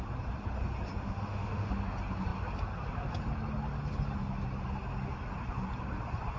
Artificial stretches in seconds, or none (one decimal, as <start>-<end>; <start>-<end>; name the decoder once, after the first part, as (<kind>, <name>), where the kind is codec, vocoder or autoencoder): 1.0-1.7 (autoencoder, DAC-VAE)